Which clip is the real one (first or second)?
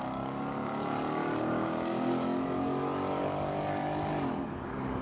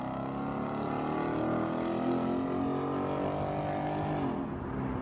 second